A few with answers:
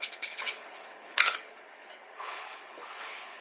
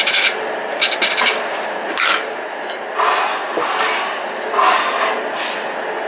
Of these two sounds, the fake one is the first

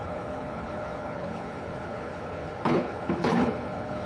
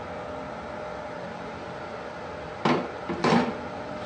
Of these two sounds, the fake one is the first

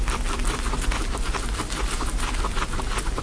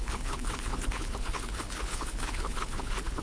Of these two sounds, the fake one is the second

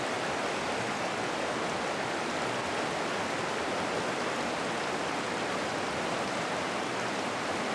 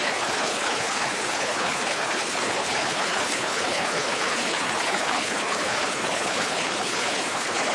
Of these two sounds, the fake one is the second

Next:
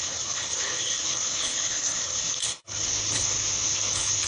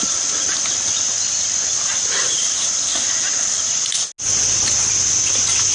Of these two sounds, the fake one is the first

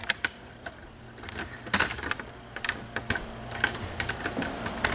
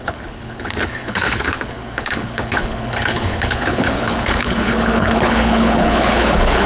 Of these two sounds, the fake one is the second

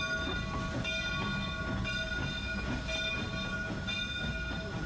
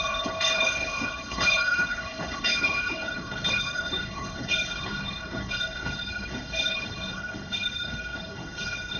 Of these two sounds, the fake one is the second